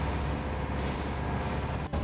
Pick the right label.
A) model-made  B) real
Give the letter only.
B